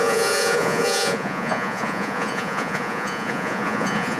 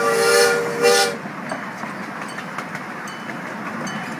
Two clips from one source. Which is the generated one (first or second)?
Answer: first